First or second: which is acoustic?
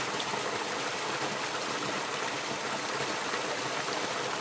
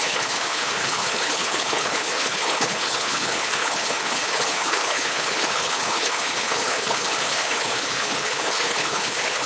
first